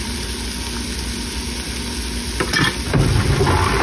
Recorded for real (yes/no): yes